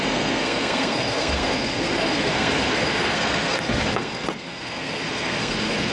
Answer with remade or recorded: remade